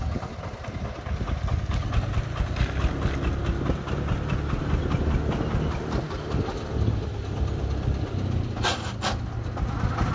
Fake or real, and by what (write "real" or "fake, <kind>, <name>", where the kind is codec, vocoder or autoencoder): real